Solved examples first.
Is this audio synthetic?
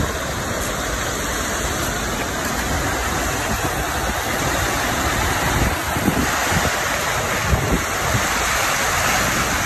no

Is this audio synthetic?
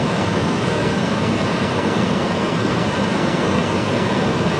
yes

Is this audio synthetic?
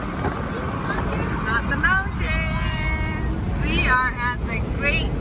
no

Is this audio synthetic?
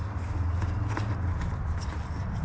no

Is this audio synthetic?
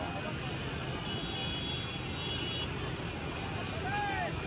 no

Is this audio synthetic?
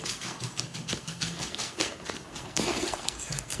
yes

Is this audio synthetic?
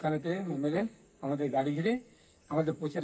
yes